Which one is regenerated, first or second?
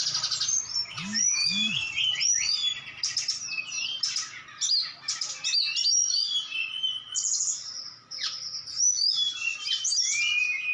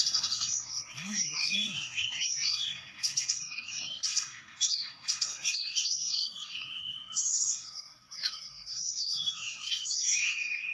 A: second